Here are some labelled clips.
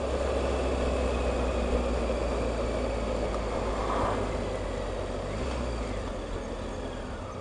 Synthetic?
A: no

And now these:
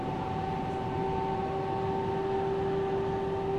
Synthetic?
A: no